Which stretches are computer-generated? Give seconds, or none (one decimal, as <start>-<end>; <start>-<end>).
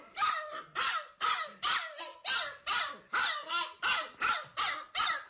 none